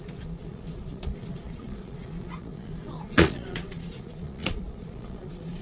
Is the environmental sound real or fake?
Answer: fake